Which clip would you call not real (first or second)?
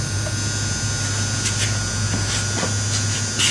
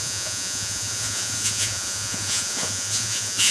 second